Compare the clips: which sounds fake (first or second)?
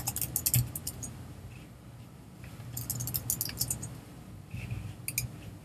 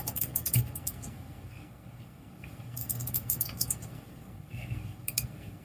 second